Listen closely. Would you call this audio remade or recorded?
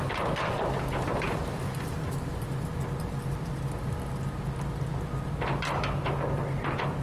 recorded